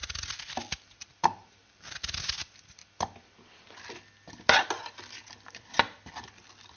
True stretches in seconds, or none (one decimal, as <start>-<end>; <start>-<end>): 0.0-0.9; 2.8-6.8

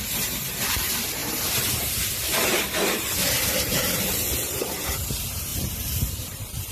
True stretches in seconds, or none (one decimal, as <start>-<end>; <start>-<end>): 5.5-6.0

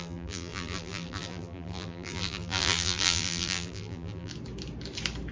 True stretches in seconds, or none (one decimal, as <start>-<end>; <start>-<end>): 4.3-5.3

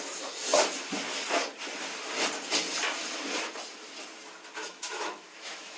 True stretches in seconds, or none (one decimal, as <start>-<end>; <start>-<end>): 0.0-4.6